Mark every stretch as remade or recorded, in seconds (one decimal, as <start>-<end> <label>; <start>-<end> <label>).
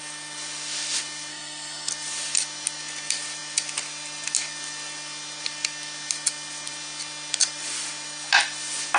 0.0-1.3 recorded; 1.3-1.9 remade; 1.9-9.0 recorded